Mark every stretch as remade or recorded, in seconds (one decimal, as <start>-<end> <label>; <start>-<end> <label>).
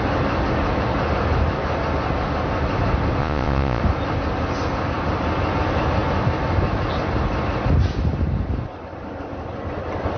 0.0-3.2 recorded; 3.2-3.8 remade; 3.8-10.2 recorded